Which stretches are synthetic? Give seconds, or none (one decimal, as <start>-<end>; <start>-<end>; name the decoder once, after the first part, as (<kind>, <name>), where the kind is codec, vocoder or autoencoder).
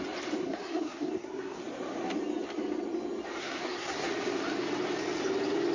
0.4-1.6 (codec, SNAC); 3.4-4.1